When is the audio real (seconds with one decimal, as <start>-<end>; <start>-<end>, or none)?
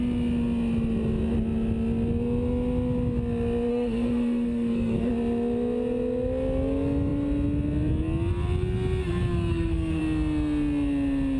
0.0-3.7; 5.1-9.5; 10.0-11.4